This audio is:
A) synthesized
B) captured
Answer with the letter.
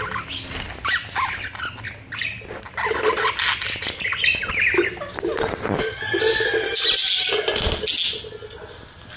B